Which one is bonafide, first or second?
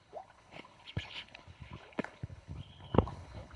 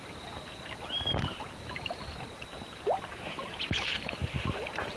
second